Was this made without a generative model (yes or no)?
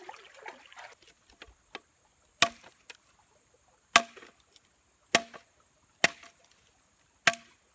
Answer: yes